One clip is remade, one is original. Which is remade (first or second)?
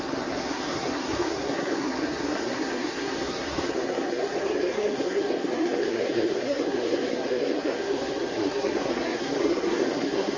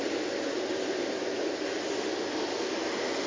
first